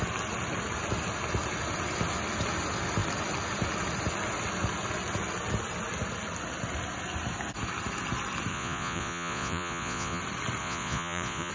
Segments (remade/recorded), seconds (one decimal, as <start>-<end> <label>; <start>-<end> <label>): 0.0-8.5 recorded; 8.5-10.2 remade; 10.2-10.6 recorded; 10.6-11.5 remade